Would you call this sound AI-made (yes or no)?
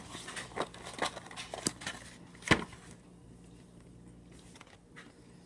no